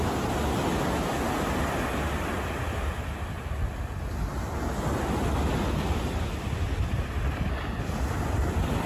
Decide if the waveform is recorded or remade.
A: recorded